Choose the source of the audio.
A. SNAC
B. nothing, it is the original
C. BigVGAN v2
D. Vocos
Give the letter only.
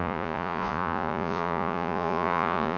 D